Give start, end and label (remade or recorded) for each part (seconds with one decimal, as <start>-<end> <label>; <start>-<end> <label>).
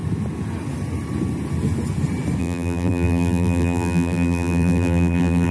0.0-2.4 recorded; 2.4-5.5 remade